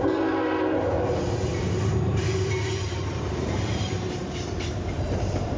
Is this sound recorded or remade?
remade